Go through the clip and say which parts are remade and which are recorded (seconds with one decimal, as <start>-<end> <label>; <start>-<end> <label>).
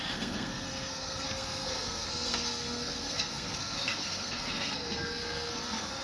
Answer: 0.0-6.0 remade